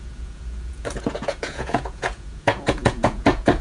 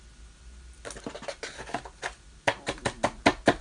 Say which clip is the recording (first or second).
second